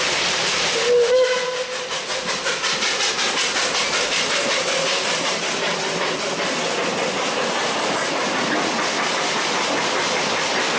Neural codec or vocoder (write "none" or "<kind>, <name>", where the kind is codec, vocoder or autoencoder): none